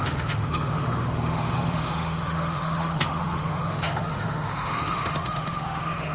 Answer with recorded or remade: remade